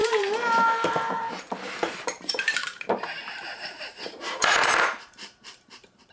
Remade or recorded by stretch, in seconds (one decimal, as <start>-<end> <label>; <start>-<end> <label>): 0.0-6.1 remade